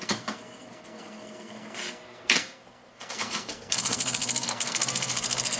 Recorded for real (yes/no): no